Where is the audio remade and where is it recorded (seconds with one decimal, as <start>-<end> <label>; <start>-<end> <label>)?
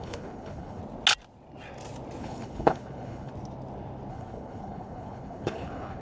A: 0.0-0.8 remade; 0.8-2.2 recorded; 2.2-3.3 remade; 3.3-4.1 recorded; 4.1-6.0 remade